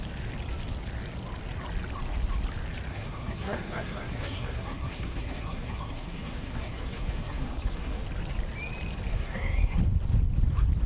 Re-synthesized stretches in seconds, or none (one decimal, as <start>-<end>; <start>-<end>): 2.9-8.0; 9.1-9.8